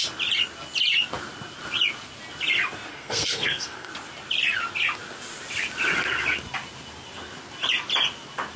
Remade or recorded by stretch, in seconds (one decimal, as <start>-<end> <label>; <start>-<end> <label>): 0.0-2.9 recorded; 2.9-3.9 remade; 3.9-8.6 recorded

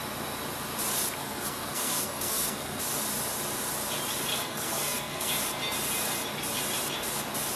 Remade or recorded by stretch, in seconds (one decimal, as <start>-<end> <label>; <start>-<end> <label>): 0.0-1.2 recorded; 1.2-2.8 remade; 2.8-4.3 recorded; 4.3-5.3 remade; 5.3-7.6 recorded

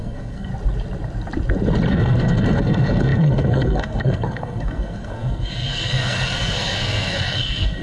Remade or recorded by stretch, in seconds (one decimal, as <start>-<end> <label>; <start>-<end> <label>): 0.0-0.5 remade; 0.5-1.9 recorded; 1.9-7.8 remade

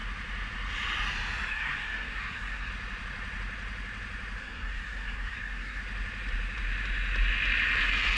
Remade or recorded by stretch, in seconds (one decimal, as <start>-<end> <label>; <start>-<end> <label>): 0.0-1.5 recorded; 1.5-2.7 remade; 2.7-4.4 recorded; 4.4-5.8 remade; 5.8-8.2 recorded

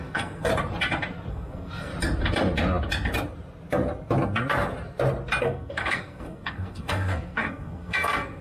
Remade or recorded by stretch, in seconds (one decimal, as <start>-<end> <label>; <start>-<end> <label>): 0.0-0.5 remade; 0.5-1.3 recorded; 1.3-1.9 remade; 1.9-5.4 recorded; 5.4-8.4 remade